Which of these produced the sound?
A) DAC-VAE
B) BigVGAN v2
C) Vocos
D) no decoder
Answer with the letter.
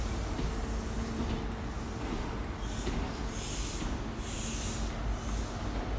D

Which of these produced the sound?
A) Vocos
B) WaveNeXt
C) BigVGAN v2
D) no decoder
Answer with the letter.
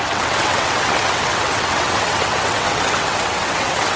B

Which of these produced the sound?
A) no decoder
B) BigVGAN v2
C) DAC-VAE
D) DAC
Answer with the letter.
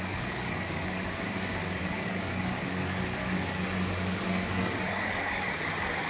D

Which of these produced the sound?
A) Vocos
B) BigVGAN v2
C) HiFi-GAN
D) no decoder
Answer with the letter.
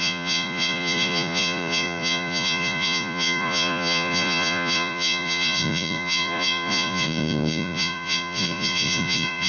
A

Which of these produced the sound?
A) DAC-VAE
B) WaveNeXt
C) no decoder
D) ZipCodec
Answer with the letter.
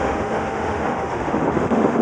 A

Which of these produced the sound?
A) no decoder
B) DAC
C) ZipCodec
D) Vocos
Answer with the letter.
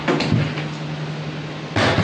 A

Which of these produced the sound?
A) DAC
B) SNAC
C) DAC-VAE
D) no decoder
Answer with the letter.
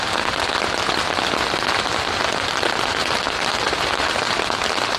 D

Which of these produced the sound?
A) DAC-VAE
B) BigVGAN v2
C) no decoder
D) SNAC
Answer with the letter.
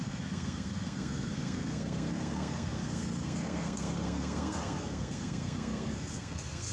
D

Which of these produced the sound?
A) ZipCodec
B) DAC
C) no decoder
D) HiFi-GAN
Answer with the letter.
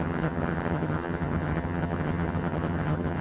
D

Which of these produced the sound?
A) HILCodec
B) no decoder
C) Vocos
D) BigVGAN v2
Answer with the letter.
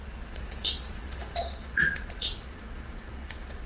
C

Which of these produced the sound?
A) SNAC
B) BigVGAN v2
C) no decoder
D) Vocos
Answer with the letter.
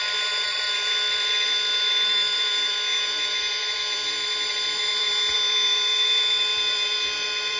B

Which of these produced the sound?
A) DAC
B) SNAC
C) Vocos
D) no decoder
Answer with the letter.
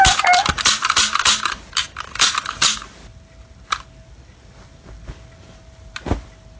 D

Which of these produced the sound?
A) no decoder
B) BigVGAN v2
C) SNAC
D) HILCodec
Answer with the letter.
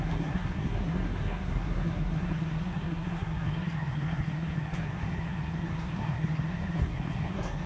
C